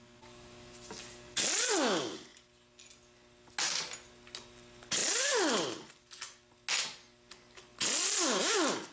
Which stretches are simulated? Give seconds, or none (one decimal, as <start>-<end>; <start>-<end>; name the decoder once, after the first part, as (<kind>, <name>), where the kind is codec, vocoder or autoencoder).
none